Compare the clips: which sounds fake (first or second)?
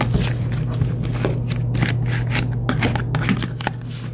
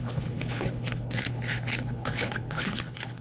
second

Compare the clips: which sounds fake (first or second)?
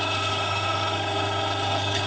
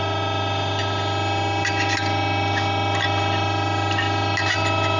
first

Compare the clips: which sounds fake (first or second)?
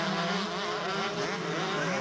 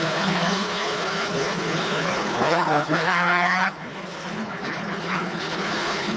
second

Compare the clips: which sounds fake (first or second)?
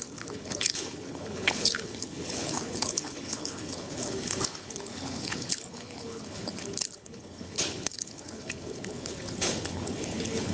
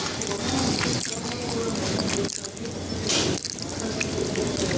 first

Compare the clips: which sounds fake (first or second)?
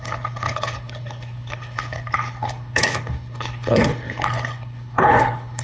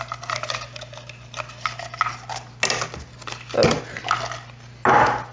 first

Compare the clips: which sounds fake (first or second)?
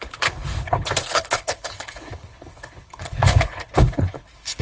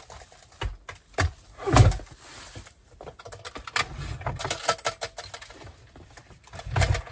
first